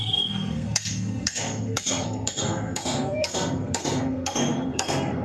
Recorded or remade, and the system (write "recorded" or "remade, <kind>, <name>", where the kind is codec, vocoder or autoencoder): remade, codec, SNAC